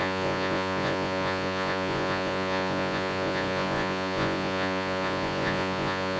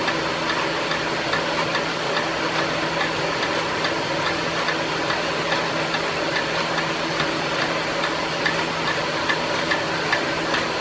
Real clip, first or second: second